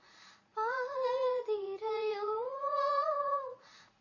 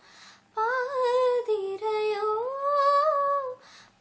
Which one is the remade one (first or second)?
first